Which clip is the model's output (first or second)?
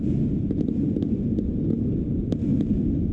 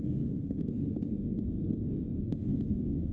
second